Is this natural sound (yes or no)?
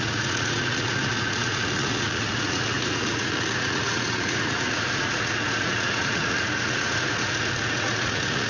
no